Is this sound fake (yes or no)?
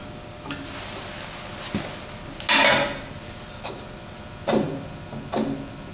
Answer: no